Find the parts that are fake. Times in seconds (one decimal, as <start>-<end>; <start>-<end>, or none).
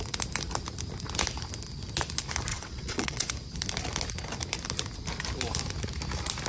2.5-3.3